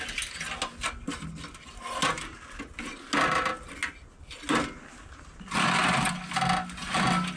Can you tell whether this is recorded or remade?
recorded